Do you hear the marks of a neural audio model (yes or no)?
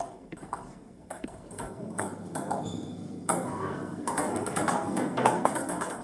yes